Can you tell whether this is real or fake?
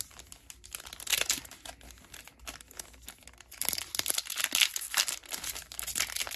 real